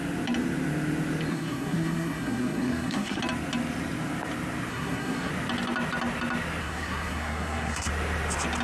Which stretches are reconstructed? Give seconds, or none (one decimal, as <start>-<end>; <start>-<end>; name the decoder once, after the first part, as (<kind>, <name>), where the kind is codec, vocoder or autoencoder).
1.3-3.2 (codec, SNAC); 4.7-5.3; 6.6-7.9